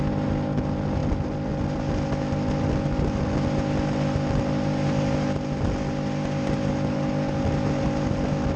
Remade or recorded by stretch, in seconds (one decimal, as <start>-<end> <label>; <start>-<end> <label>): 0.0-8.6 recorded